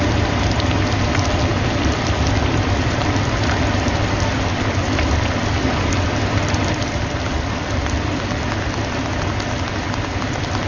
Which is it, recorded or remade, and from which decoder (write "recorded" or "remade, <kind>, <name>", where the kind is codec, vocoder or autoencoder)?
remade, vocoder, BigVGAN v2